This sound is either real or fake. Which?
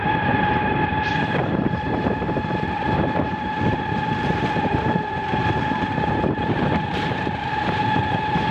fake